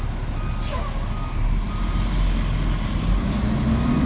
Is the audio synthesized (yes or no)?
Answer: no